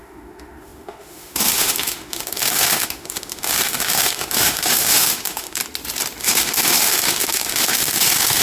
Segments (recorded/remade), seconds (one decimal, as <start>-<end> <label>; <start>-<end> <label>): 0.0-5.6 remade; 5.6-6.2 recorded; 6.2-8.4 remade